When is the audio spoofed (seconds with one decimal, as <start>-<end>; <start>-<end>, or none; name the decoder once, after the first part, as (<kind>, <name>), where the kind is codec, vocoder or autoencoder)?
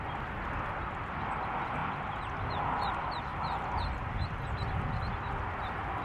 3.3-4.3 (vocoder, BigVGAN v2)